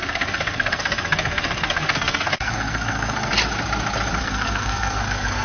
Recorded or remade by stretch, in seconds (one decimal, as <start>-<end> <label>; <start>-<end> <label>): 0.0-3.3 remade; 3.3-4.2 recorded; 4.2-5.4 remade